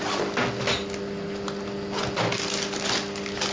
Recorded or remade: recorded